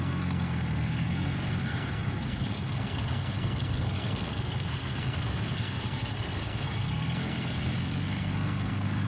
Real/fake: fake